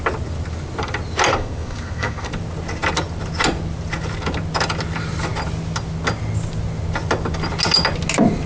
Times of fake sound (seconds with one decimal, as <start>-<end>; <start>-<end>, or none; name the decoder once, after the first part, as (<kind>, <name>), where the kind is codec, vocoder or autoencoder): 1.3-2.3 (codec, SNAC)